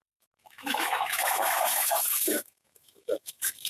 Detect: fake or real fake